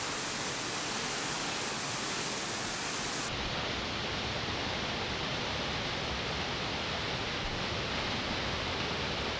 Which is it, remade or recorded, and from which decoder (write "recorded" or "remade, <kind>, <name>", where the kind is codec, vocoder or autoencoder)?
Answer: recorded